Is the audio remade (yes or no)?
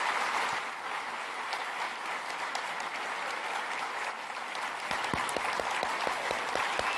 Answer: no